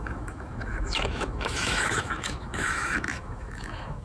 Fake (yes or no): yes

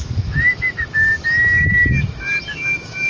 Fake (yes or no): yes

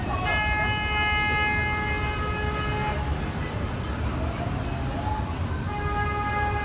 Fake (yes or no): no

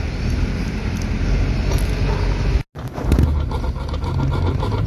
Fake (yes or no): no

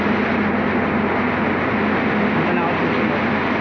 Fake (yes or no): no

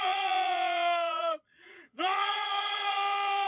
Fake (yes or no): yes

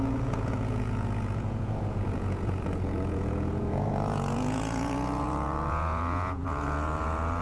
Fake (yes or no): yes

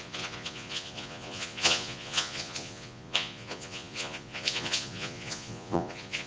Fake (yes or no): yes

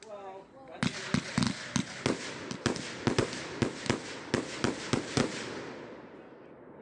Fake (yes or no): no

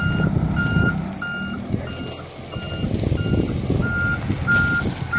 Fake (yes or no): no